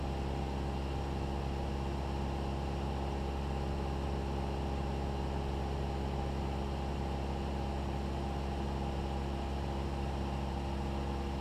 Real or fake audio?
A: real